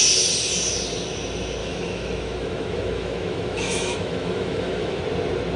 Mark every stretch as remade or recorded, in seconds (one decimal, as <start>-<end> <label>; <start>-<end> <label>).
0.0-1.6 recorded; 1.6-5.0 remade; 5.0-5.6 recorded